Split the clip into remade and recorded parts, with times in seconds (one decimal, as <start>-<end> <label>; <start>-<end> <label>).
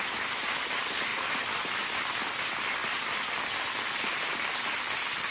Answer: 0.0-1.1 recorded; 1.1-2.0 remade; 2.0-2.8 recorded; 2.8-3.9 remade; 3.9-5.3 recorded